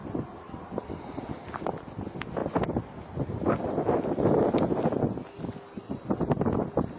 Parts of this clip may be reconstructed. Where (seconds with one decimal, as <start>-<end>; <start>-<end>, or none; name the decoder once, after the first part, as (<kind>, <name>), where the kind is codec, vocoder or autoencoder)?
none